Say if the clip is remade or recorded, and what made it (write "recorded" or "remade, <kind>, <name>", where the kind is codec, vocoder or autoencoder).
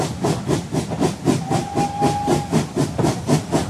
recorded